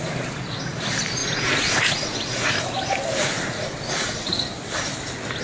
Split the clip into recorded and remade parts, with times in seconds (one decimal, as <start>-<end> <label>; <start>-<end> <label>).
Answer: 0.0-1.2 recorded; 1.2-2.5 remade; 2.5-3.2 recorded; 3.2-4.3 remade; 4.3-5.4 recorded